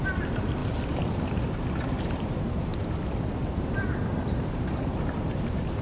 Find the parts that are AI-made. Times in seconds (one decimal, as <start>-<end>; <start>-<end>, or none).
0.0-2.7; 3.4-5.8